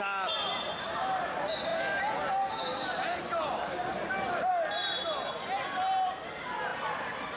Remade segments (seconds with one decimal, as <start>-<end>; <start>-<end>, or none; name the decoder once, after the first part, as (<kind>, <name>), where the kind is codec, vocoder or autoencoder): none

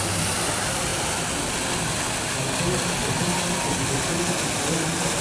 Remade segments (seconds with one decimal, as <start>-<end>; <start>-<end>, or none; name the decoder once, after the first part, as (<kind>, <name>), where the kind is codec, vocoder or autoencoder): none